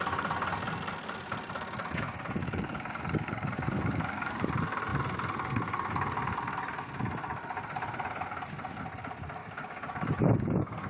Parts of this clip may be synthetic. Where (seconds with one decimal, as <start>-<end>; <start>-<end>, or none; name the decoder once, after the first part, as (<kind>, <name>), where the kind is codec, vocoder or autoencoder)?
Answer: 2.4-4.5 (codec, DAC); 9.4-10.9